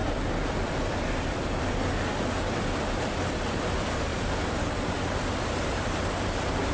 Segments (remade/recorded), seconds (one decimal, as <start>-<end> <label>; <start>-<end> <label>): 0.0-6.7 remade